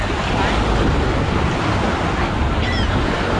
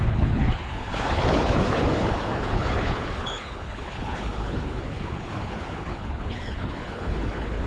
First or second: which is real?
first